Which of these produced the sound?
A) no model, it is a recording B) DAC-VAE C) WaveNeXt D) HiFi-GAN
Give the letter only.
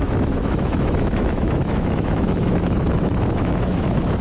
B